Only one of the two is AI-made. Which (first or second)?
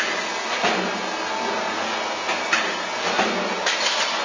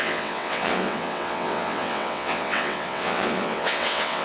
second